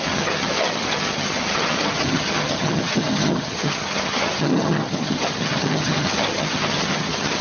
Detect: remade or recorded remade